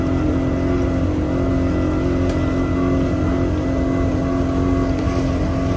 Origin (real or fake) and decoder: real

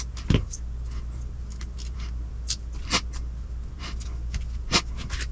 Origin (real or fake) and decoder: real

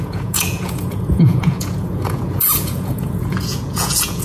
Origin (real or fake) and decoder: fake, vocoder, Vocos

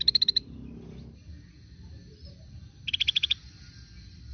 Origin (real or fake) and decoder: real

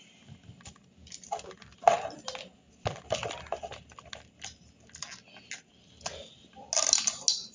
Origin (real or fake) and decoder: real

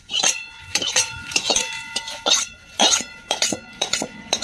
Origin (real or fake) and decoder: fake, vocoder, Vocos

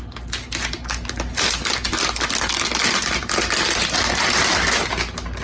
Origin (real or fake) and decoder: real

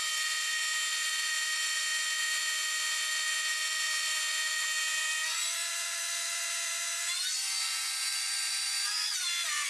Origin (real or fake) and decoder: fake, vocoder, Vocos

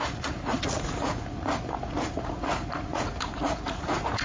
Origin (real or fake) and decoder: fake, vocoder, Vocos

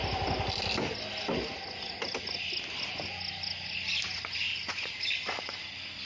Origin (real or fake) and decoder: real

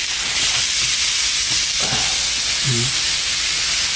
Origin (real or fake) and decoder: real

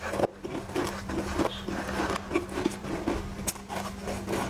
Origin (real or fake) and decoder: real